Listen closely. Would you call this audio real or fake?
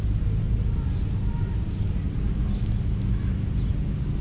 real